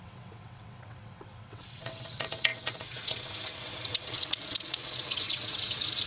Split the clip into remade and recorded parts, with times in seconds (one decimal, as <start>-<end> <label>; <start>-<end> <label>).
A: 0.0-6.1 remade